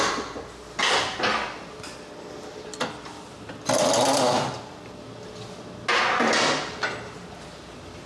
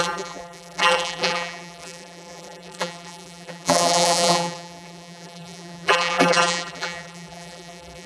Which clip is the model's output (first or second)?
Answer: second